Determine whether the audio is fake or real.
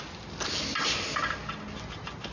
real